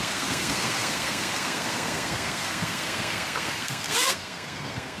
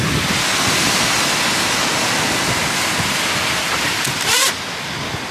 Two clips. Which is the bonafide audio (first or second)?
second